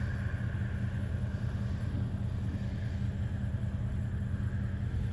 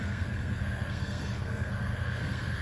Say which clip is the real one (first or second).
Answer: first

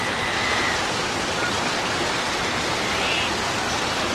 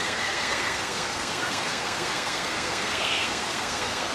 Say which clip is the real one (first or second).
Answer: first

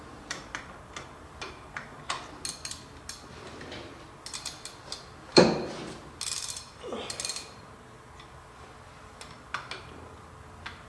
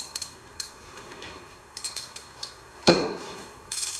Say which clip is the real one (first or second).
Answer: first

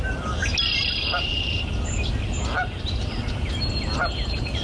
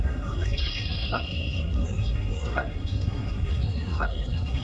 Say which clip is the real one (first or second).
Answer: first